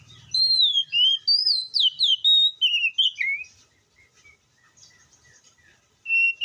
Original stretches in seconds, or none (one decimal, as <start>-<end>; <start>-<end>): 0.0-6.4